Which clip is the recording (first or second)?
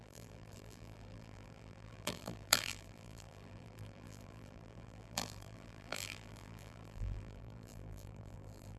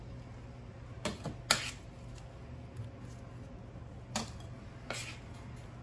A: second